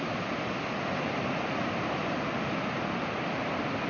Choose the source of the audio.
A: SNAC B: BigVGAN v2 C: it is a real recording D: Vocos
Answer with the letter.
C